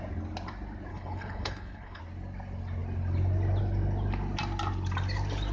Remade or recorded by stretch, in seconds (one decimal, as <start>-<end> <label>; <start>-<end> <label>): 0.0-0.9 recorded; 0.9-2.0 remade; 2.0-5.5 recorded